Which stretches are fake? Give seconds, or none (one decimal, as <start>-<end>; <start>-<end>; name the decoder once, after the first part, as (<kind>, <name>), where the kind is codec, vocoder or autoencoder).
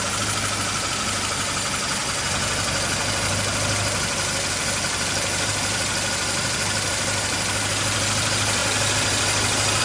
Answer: none